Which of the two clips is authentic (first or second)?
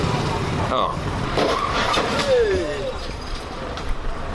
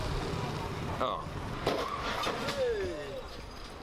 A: second